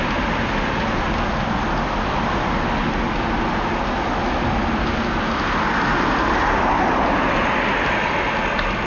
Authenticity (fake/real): real